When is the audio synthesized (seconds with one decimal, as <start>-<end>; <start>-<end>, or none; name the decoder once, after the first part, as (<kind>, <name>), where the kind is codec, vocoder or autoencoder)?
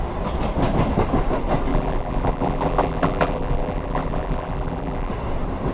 1.7-5.1 (vocoder, BigVGAN v2)